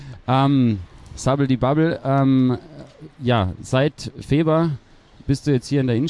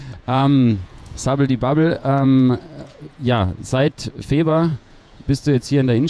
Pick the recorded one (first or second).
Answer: first